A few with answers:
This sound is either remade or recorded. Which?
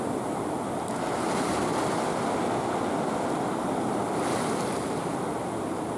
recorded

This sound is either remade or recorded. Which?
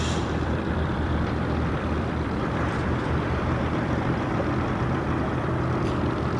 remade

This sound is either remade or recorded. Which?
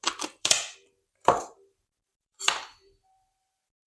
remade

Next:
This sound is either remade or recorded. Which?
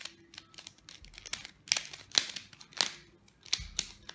recorded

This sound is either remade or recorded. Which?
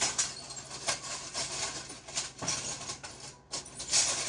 recorded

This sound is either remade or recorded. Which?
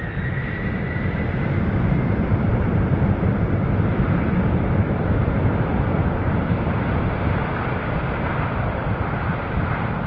remade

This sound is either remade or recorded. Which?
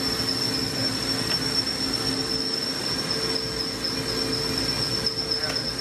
recorded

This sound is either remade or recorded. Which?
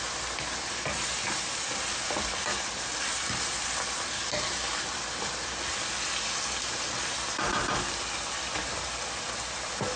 recorded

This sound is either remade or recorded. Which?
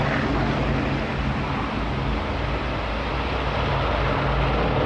recorded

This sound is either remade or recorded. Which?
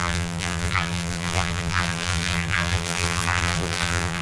remade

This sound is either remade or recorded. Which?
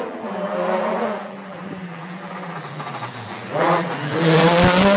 remade